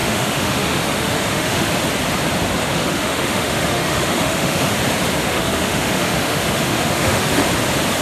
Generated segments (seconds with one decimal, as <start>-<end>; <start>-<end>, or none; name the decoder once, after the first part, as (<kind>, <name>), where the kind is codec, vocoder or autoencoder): 0.0-1.7 (autoencoder, DAC-VAE); 2.6-4.7; 5.2-7.4